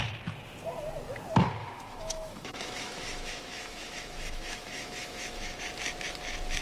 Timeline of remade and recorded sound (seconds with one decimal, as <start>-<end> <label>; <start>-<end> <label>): 0.0-1.6 recorded; 1.6-5.6 remade; 5.6-6.6 recorded